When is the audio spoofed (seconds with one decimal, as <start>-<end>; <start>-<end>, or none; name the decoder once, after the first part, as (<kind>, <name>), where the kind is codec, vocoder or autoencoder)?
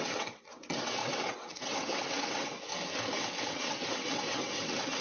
0.0-2.7 (vocoder, WaveNeXt); 3.4-5.0